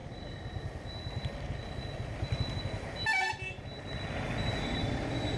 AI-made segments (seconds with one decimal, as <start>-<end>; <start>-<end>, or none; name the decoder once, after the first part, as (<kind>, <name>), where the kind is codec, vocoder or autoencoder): none